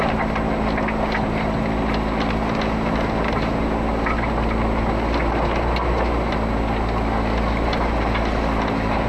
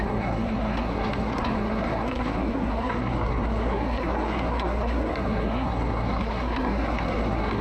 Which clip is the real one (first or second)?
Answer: first